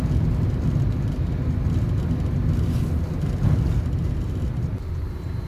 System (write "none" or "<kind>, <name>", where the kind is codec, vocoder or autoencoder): none